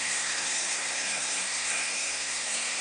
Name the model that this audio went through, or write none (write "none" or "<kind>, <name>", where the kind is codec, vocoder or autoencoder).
codec, SNAC